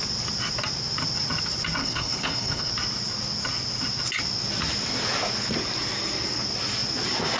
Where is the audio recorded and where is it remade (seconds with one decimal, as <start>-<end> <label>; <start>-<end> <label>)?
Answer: 0.0-1.8 recorded; 1.8-2.7 remade; 2.7-7.4 recorded